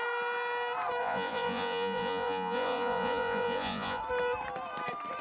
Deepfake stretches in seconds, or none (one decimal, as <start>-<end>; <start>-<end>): 1.0-4.0